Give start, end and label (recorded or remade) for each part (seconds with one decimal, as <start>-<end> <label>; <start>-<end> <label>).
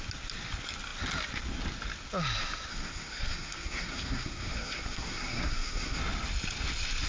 0.0-2.7 recorded; 2.7-6.0 remade; 6.0-7.1 recorded